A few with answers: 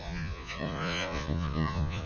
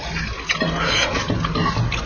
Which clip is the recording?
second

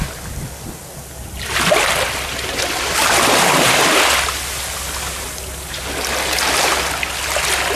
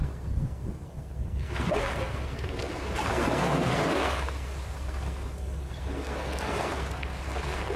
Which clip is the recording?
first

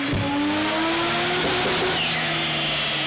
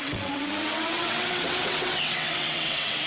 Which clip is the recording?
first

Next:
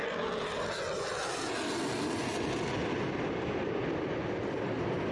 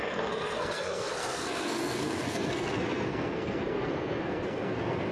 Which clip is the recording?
first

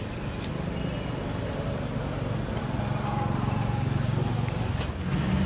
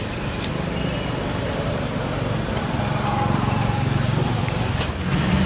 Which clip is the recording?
first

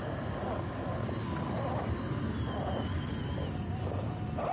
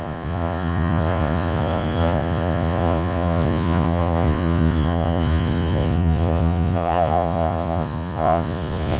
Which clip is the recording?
first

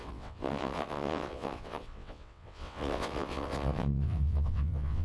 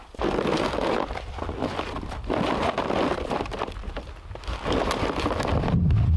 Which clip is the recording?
second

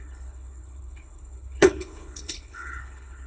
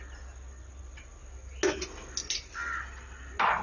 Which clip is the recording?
second